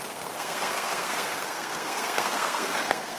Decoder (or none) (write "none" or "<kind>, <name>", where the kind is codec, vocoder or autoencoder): codec, SNAC